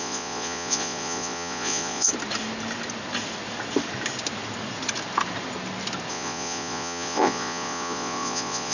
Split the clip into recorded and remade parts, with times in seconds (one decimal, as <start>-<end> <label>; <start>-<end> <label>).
0.0-2.1 remade; 2.1-6.1 recorded; 6.1-8.7 remade